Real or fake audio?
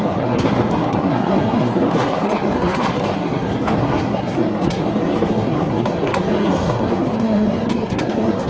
fake